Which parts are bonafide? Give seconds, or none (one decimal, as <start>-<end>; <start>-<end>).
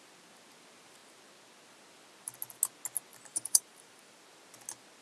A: 0.0-3.1; 4.2-5.0